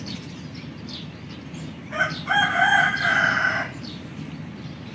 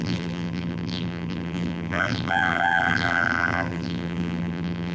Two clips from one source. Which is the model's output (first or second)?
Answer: second